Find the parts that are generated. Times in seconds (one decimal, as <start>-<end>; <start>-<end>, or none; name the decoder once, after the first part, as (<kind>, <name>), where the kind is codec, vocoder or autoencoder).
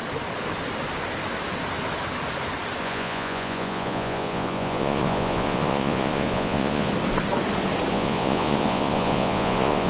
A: 2.8-6.9 (vocoder, Vocos); 7.9-9.9